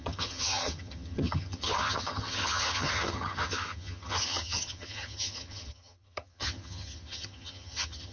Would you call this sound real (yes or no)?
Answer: no